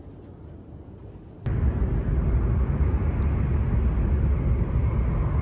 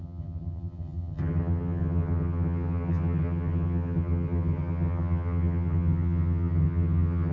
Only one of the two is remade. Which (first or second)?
second